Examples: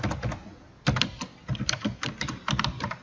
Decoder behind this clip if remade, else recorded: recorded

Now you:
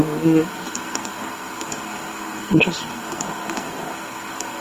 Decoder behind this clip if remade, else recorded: remade, codec, SNAC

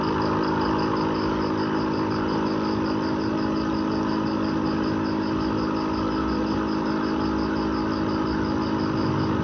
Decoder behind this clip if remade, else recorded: recorded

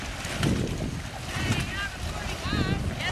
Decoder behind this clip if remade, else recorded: recorded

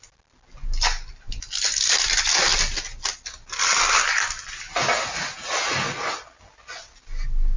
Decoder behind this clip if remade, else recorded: recorded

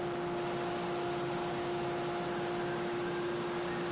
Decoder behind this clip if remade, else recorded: recorded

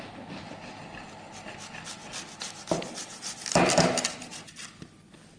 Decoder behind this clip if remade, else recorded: recorded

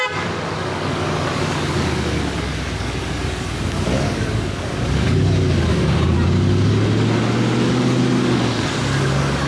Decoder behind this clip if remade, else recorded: remade, codec, DAC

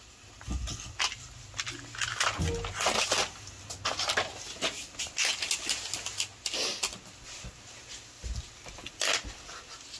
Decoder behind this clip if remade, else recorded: recorded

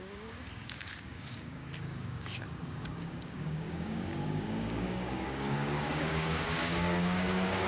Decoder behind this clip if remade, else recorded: remade, codec, DAC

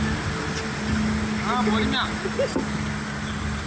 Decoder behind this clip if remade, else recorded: recorded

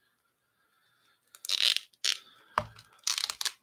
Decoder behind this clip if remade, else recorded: recorded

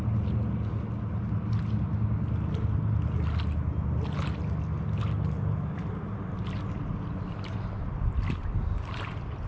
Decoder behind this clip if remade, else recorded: recorded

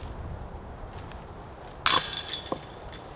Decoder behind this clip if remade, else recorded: recorded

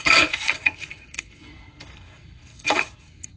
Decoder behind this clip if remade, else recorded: remade, codec, SNAC